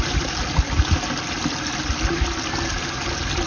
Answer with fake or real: real